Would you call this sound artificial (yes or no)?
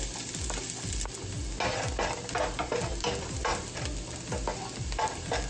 no